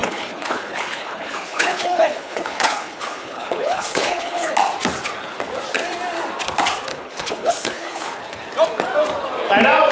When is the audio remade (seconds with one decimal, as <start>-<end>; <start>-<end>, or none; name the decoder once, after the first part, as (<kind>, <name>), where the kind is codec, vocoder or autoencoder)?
0.0-4.5 (codec, HILCodec); 6.9-8.2